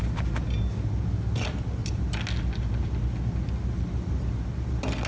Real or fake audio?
real